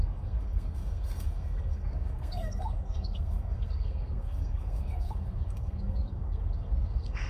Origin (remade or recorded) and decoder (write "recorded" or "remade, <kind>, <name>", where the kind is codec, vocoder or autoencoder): remade, codec, SNAC